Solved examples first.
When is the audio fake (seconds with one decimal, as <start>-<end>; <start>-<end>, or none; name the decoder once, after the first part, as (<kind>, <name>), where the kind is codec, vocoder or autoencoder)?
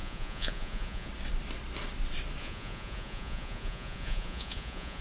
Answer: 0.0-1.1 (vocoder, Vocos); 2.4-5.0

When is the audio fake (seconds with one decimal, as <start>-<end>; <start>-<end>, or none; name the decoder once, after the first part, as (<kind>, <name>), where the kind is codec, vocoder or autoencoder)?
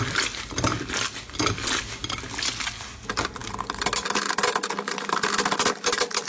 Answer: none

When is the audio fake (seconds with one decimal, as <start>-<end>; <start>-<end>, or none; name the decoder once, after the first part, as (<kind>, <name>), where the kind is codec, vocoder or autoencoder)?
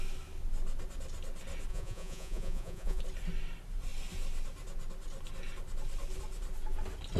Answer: 1.7-3.0 (vocoder, Vocos)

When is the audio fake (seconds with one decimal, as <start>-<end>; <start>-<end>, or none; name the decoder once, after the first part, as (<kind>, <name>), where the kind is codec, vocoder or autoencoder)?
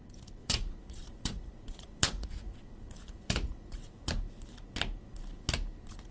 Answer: 0.4-4.1 (vocoder, Vocos)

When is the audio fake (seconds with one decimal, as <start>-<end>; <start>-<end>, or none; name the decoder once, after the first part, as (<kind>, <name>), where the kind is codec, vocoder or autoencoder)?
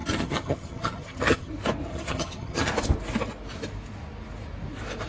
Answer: 0.0-1.5 (vocoder, HiFi-GAN); 1.9-2.7